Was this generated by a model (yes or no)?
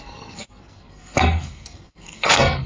yes